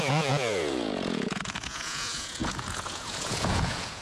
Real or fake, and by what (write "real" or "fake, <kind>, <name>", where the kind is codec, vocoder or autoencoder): fake, vocoder, Vocos